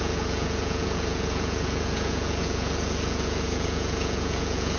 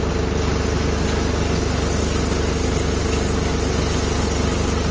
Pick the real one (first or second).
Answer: second